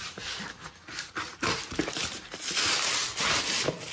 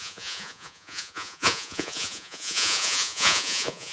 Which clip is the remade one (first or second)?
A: second